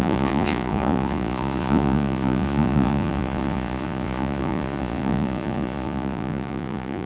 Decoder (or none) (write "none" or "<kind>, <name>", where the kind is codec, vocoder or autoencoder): vocoder, Vocos